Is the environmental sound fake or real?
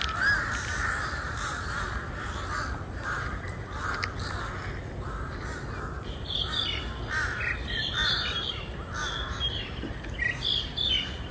real